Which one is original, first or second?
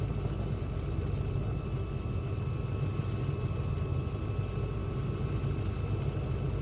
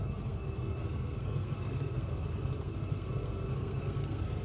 first